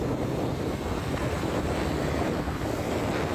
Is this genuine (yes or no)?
yes